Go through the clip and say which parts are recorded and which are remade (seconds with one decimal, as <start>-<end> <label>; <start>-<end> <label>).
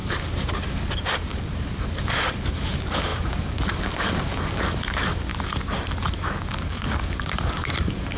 0.0-5.3 remade; 5.3-6.2 recorded; 6.2-8.2 remade